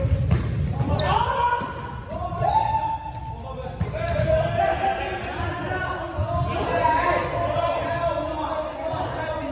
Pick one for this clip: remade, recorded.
recorded